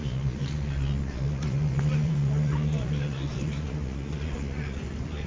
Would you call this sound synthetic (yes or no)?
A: yes